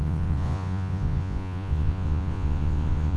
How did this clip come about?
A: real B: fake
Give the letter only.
B